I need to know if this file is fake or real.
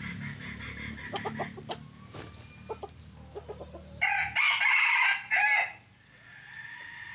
real